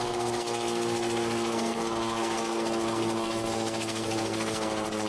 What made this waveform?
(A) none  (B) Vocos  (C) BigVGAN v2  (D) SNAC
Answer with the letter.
D